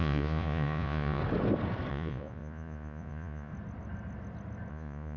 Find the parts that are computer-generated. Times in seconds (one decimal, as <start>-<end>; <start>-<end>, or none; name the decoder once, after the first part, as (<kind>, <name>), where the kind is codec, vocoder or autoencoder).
0.0-1.2 (vocoder, Vocos); 1.9-3.5; 4.7-5.2